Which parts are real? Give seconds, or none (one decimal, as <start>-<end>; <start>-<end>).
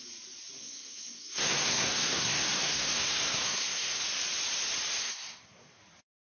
0.0-0.6; 4.0-5.0; 5.8-6.3